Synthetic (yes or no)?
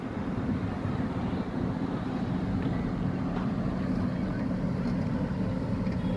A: no